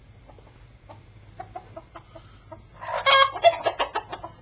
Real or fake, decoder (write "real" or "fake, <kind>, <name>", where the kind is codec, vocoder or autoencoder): real